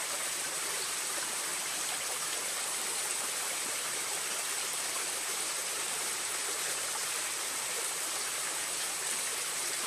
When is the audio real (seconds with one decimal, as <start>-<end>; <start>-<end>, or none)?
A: 1.5-5.2